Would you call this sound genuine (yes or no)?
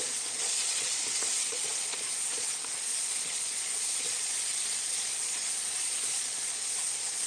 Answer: no